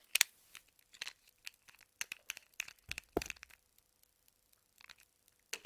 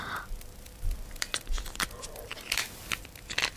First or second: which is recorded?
second